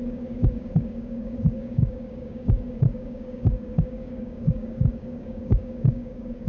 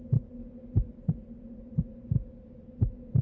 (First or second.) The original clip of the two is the second